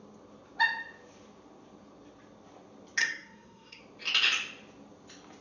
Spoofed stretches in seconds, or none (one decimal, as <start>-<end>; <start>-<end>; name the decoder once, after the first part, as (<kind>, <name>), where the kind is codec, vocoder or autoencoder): 3.0-3.8 (codec, SNAC)